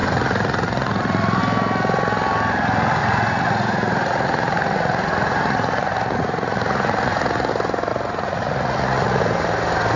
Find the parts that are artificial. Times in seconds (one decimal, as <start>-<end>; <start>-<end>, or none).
0.0-1.4; 3.0-7.5; 7.9-9.2